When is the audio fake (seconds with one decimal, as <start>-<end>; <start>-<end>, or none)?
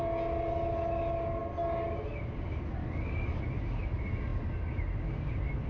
2.8-3.4